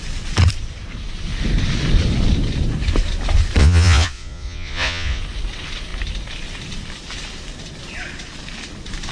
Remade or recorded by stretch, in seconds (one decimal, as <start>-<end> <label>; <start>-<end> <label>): 0.0-3.6 recorded; 3.6-5.2 remade; 5.2-9.1 recorded